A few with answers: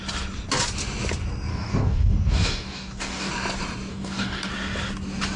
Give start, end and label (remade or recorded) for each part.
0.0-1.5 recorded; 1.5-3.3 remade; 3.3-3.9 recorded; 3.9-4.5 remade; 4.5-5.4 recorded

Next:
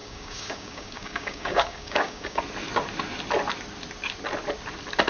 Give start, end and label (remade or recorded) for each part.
0.0-2.4 remade; 2.4-5.1 recorded

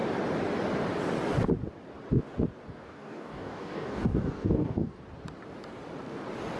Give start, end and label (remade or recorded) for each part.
0.0-2.7 recorded; 2.7-5.0 remade; 5.0-6.6 recorded